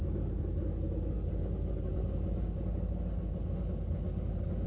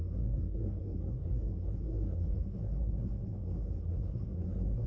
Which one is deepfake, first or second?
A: second